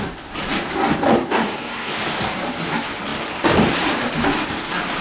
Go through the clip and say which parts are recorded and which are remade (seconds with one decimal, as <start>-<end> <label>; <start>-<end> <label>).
0.0-1.1 recorded; 1.1-1.9 remade; 1.9-5.0 recorded